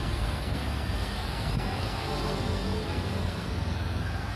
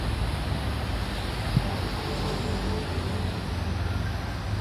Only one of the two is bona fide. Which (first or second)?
second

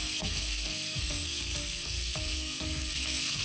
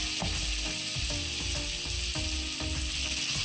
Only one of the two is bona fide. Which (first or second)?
second